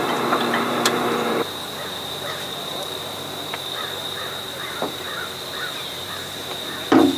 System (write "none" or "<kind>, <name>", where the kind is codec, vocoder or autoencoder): vocoder, BigVGAN v2